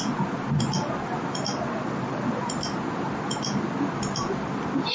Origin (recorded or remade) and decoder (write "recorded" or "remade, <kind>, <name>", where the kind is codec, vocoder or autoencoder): recorded